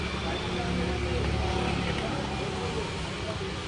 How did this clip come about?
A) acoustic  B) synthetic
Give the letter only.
A